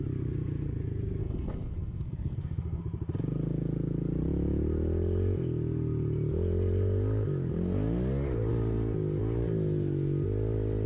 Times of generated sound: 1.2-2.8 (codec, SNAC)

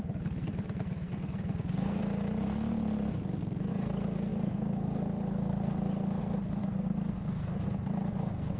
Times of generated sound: 0.0-2.0 (codec, SNAC); 3.7-8.6